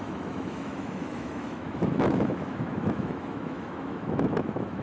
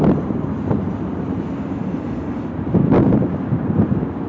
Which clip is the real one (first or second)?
second